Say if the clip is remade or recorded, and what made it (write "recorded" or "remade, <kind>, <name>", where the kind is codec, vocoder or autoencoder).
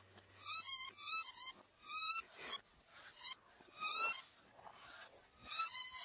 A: recorded